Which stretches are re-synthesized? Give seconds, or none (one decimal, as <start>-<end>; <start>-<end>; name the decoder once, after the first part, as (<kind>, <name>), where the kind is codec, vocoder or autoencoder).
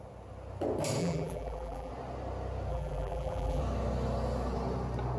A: 1.0-1.9 (vocoder, BigVGAN v2); 2.7-3.6